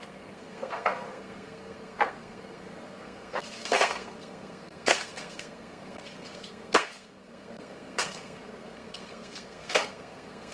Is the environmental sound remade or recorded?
remade